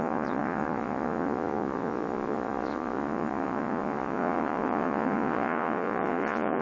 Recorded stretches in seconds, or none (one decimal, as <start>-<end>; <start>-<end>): none